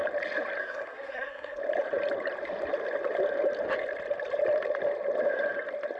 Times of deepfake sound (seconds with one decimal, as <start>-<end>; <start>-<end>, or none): 0.6-1.6